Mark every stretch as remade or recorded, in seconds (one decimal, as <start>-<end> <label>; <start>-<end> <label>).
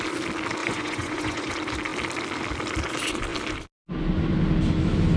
0.0-0.6 recorded; 0.6-1.5 remade; 1.5-5.2 recorded